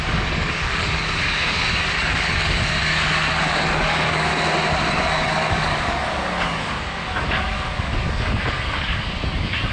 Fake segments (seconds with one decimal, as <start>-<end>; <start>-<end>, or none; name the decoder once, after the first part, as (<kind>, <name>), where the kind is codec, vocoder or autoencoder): 0.0-4.3 (codec, DAC); 4.9-9.7

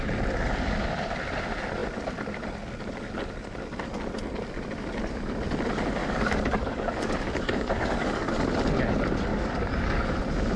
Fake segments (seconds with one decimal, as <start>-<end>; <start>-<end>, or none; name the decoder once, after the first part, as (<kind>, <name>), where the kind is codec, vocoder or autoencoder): 6.0-8.4 (codec, DAC); 9.3-10.2